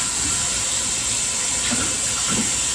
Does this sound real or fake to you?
real